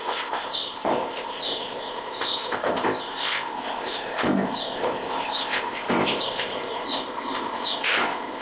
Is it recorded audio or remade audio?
remade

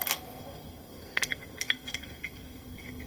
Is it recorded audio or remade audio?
remade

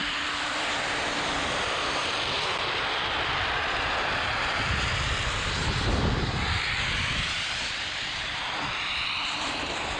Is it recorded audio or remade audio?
remade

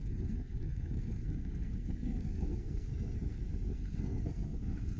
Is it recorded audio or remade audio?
remade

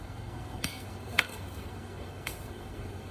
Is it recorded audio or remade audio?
remade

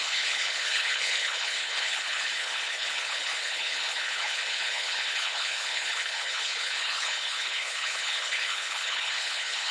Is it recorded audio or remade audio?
remade